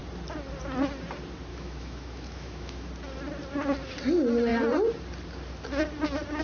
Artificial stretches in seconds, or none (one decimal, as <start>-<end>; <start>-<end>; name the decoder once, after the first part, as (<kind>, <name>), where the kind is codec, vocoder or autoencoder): 1.5-2.9 (autoencoder, DAC-VAE)